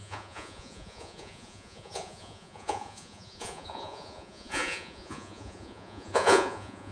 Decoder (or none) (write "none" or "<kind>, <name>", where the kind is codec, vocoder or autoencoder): vocoder, Vocos